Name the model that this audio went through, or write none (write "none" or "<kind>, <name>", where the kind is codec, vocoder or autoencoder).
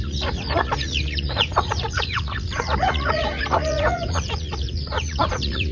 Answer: vocoder, Vocos